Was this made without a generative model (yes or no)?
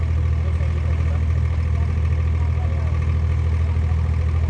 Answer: yes